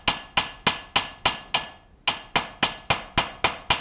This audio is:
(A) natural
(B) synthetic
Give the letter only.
A